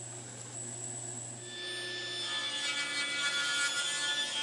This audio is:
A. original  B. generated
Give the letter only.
A